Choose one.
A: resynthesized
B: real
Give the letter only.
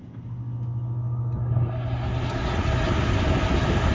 B